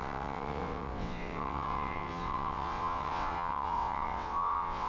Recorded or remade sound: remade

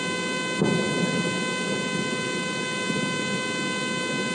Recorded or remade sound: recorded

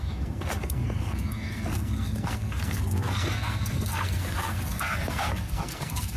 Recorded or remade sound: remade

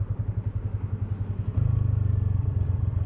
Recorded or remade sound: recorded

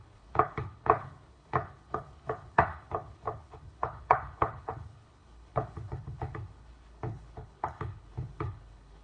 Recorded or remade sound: remade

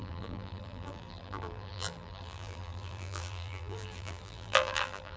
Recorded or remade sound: remade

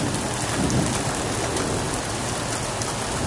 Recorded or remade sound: recorded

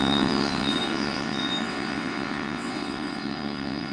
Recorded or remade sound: remade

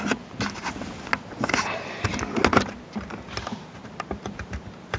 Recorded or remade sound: recorded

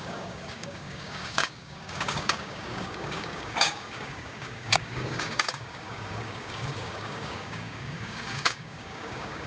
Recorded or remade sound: remade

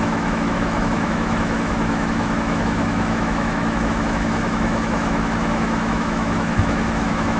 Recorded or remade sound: remade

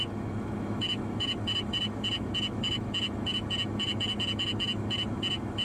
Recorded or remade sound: remade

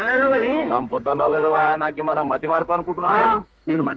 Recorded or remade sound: remade